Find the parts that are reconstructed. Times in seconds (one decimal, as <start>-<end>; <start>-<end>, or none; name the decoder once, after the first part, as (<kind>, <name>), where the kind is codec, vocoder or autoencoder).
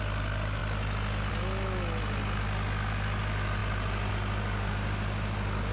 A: none